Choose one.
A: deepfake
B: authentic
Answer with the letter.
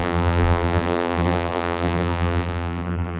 A